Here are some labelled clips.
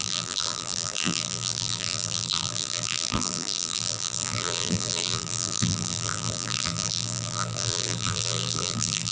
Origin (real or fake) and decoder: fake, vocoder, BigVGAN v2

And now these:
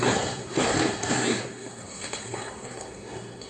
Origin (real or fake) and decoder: fake, codec, SNAC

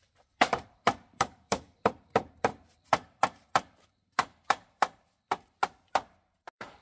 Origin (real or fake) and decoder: fake, vocoder, BigVGAN v2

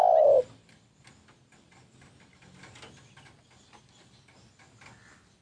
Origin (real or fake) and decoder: real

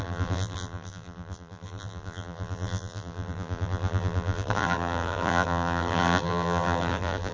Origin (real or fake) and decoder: fake, vocoder, BigVGAN v2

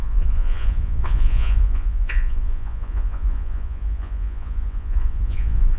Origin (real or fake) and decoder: fake, vocoder, Vocos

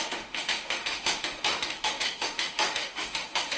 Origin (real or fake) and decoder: fake, autoencoder, DAC-VAE